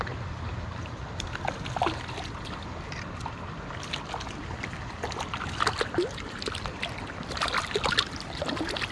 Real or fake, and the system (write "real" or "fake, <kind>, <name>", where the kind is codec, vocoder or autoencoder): real